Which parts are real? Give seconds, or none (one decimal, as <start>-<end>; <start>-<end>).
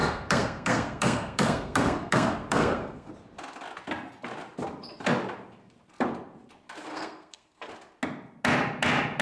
3.1-6.9; 7.7-9.2